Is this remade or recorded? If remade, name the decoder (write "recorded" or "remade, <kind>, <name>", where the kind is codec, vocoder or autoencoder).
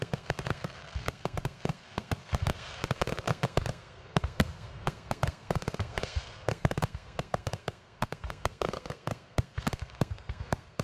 remade, codec, SNAC